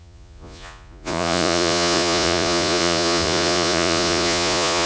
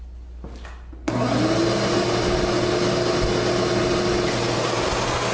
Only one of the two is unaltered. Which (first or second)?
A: second